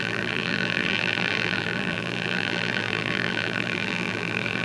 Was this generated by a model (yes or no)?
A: yes